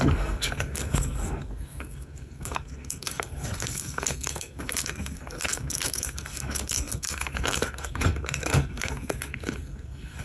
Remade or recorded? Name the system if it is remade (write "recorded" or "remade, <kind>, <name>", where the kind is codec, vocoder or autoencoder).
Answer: remade, codec, SNAC